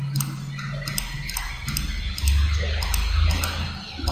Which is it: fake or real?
real